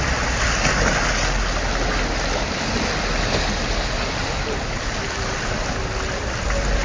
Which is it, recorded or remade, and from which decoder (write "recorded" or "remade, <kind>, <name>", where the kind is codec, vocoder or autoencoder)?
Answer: recorded